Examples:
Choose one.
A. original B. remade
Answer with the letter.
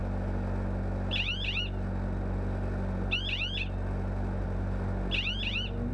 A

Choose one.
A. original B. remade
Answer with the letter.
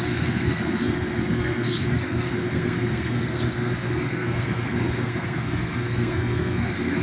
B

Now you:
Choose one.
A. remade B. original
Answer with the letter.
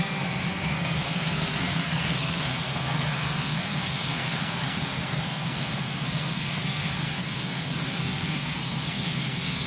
A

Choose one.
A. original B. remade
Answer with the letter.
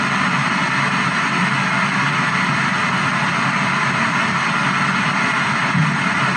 A